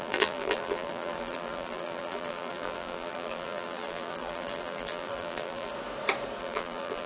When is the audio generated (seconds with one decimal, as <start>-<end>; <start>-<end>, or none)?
0.0-5.7; 6.4-7.1